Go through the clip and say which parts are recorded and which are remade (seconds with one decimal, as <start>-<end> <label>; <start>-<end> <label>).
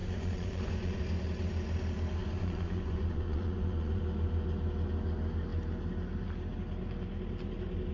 0.0-1.0 remade; 1.0-2.2 recorded; 2.2-4.0 remade; 4.0-7.9 recorded